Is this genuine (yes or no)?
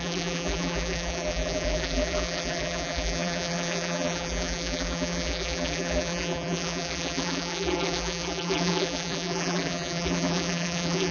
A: no